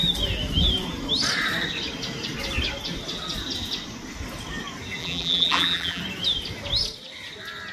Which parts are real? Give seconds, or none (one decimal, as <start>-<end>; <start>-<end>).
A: 0.0-5.0; 6.0-7.7